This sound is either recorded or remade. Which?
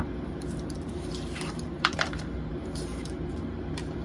remade